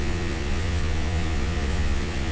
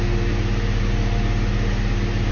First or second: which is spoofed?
first